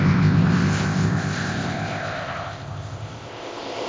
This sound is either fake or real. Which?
fake